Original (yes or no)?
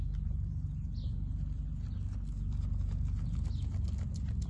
yes